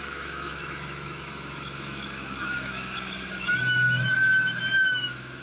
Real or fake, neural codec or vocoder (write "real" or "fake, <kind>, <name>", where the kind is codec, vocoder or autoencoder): fake, autoencoder, DAC-VAE